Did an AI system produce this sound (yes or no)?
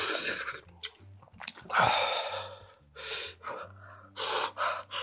no